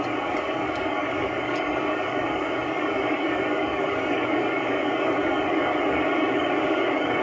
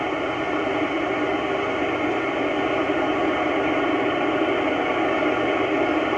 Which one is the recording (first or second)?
second